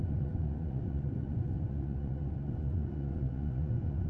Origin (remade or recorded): remade